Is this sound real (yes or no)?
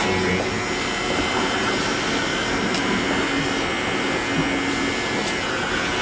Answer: yes